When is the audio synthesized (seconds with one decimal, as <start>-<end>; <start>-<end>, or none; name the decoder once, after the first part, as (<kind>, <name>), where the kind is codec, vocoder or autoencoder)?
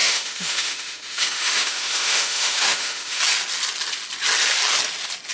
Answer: 0.0-3.2 (autoencoder, DAC-VAE)